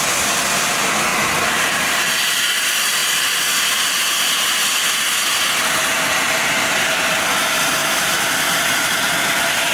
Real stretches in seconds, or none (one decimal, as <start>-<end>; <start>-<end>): 0.0-1.1; 2.0-7.8; 8.3-9.7